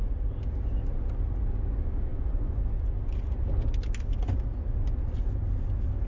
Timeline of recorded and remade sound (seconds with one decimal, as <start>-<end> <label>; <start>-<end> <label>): 0.0-6.1 recorded